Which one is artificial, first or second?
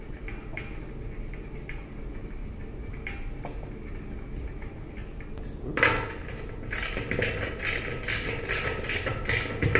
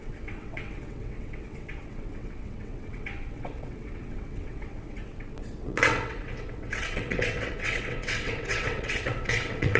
second